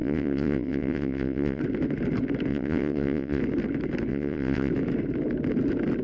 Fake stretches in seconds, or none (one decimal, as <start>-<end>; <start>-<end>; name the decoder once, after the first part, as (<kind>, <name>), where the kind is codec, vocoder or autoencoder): 0.0-1.6 (vocoder, WaveNeXt); 2.5-3.4; 4.1-4.7